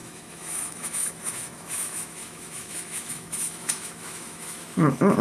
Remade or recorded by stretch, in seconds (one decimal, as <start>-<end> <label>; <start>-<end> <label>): 0.0-5.2 remade